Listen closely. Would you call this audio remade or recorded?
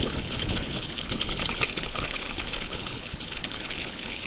remade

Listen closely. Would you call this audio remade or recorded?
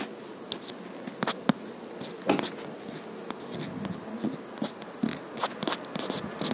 recorded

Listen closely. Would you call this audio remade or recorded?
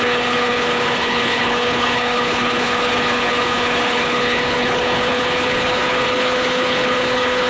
remade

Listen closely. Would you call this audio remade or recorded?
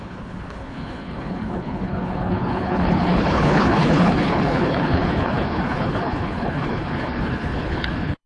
remade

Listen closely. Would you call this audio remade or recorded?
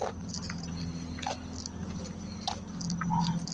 recorded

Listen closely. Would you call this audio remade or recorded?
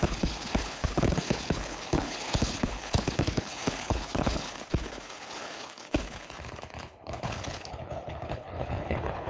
remade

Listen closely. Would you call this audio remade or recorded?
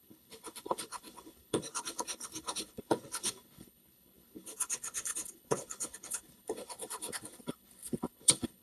remade